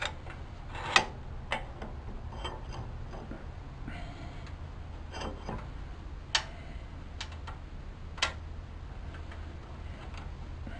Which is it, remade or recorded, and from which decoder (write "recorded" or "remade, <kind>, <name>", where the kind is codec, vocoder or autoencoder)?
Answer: recorded